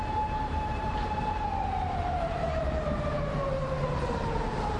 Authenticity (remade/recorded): remade